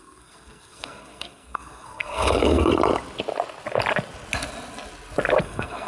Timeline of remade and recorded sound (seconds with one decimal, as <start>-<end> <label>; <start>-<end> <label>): 0.0-2.7 remade; 2.7-5.4 recorded; 5.4-5.9 remade